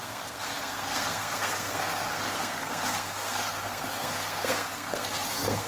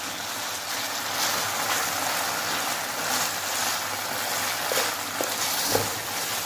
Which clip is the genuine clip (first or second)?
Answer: second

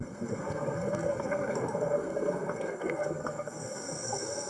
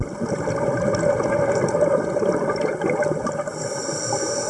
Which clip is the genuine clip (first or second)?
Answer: second